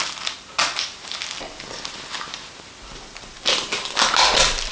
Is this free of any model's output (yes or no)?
yes